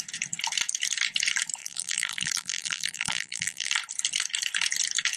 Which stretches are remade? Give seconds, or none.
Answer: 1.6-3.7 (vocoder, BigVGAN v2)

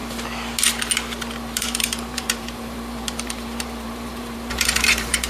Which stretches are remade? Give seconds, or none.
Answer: 1.6-5.3 (vocoder, BigVGAN v2)

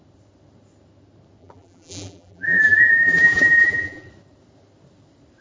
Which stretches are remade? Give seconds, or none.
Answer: 1.4-4.1 (vocoder, BigVGAN v2)

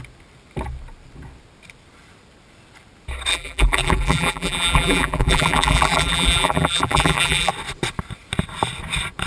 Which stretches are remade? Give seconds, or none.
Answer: 3.3-7.5 (vocoder, BigVGAN v2)

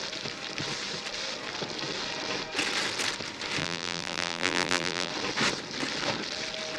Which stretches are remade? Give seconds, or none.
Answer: 3.6-5.1 (vocoder, BigVGAN v2)